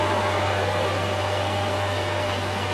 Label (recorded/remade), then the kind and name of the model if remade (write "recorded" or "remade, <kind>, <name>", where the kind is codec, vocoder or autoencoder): remade, codec, SNAC